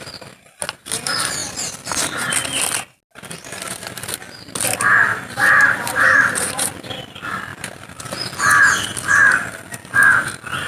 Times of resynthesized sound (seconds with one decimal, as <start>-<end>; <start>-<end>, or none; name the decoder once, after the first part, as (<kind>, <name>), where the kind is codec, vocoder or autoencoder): 5.1-6.5 (vocoder, BigVGAN v2); 7.5-8.0